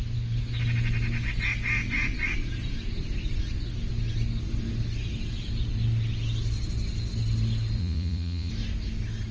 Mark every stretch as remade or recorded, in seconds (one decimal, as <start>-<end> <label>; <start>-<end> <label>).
0.0-7.8 recorded; 7.8-8.5 remade; 8.5-9.3 recorded